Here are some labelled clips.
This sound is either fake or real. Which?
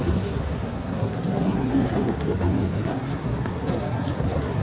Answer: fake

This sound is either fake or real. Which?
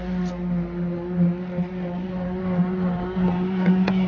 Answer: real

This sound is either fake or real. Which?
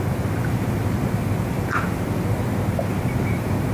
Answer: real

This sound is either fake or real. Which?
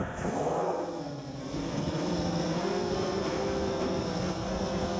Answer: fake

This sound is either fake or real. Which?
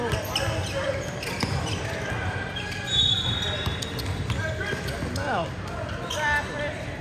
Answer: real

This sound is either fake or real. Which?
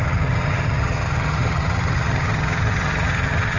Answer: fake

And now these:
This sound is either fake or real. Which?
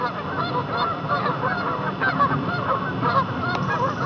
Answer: real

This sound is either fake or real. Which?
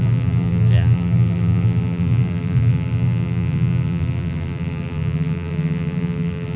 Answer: fake